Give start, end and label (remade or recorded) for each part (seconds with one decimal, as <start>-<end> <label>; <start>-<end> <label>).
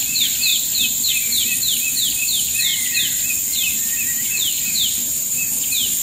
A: 0.0-2.7 recorded; 2.7-3.2 remade; 3.2-3.7 recorded; 3.7-4.3 remade; 4.3-5.0 recorded; 5.0-5.6 remade; 5.6-6.0 recorded